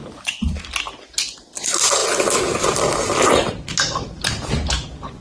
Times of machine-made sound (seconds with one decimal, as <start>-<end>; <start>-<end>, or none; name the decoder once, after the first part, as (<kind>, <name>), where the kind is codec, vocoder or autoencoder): none